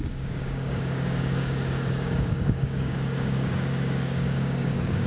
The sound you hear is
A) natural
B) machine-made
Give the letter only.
B